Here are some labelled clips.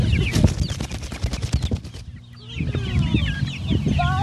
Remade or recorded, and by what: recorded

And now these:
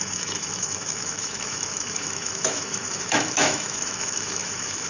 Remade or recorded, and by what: remade, autoencoder, DAC-VAE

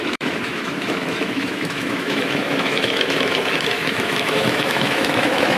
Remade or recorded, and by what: remade, autoencoder, DAC-VAE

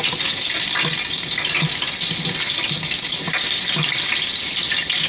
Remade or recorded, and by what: recorded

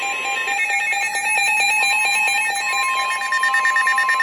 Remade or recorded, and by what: recorded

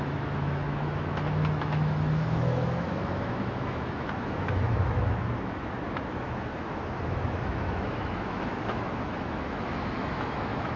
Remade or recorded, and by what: remade, autoencoder, DAC-VAE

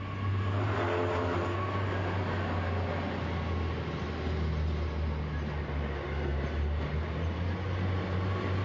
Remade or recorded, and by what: recorded